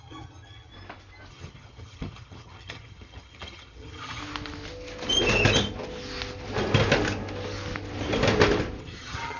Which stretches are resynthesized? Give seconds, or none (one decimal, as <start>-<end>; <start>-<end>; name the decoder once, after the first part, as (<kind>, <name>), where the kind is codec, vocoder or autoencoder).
0.0-0.7 (vocoder, HiFi-GAN); 1.3-4.2; 8.8-9.4